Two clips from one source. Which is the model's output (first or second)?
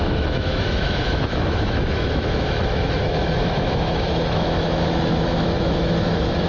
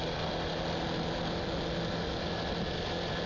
first